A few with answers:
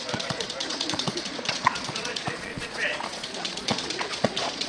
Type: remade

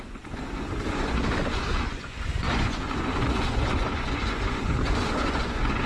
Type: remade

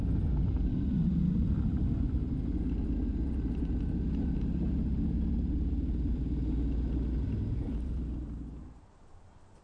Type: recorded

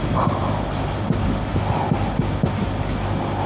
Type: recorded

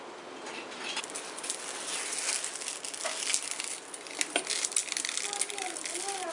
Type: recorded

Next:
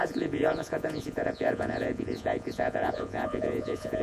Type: remade